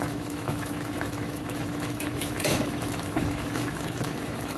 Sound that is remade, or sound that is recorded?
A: remade